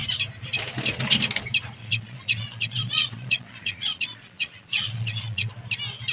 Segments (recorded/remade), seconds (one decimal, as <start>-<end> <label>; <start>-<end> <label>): 0.0-1.8 recorded; 1.8-5.5 remade; 5.5-6.1 recorded